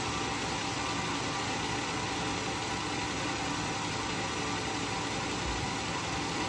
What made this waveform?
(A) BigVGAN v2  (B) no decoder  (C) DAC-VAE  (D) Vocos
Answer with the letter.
B